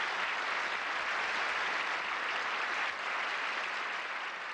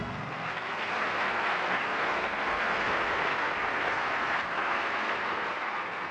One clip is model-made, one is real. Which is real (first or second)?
first